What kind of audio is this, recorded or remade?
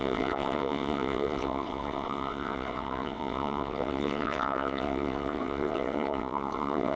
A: remade